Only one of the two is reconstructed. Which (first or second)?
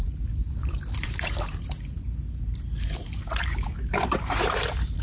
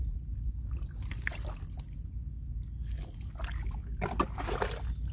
first